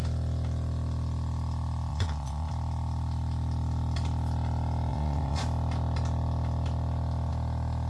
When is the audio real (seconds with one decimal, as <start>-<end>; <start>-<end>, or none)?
0.0-1.9; 2.5-4.9; 5.4-7.9